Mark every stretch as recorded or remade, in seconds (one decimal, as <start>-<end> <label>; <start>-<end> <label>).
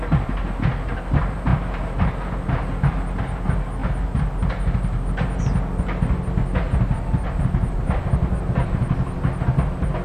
0.0-10.0 recorded